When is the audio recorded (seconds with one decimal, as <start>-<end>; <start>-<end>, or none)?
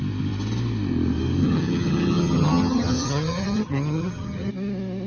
0.0-1.4; 4.5-5.1